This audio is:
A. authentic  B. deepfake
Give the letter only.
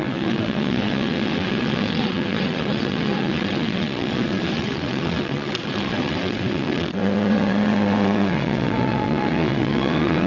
B